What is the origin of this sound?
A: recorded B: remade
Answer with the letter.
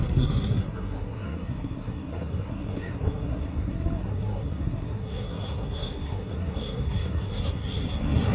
B